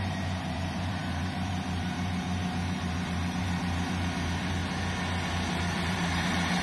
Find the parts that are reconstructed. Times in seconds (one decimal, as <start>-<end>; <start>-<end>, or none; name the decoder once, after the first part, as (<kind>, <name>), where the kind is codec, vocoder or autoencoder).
0.0-4.6 (vocoder, BigVGAN v2); 5.3-6.6